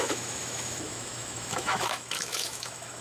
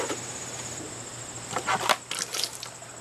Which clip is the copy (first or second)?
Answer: first